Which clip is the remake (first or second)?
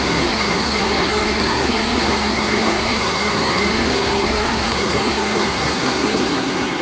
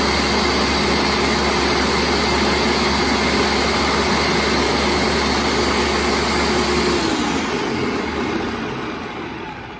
first